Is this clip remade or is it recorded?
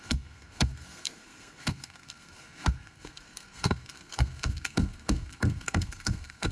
remade